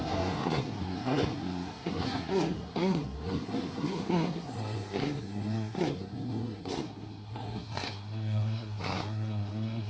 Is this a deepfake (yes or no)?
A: yes